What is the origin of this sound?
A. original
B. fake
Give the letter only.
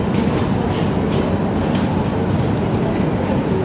A